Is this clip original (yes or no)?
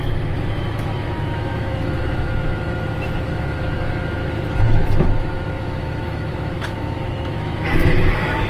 no